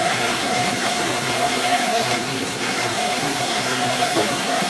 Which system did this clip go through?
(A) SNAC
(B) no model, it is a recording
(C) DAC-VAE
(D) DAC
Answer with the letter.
A